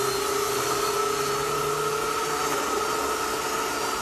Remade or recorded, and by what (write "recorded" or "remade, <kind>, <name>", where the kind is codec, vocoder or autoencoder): recorded